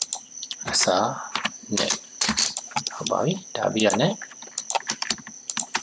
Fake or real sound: real